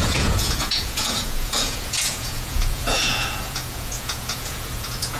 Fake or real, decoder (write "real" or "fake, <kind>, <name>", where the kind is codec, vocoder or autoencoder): fake, vocoder, Vocos